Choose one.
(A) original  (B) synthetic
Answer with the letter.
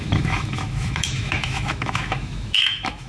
B